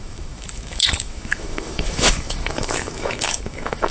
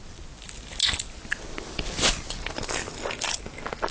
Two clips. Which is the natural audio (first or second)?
second